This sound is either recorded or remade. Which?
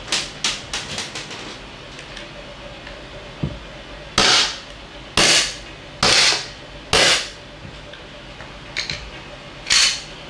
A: recorded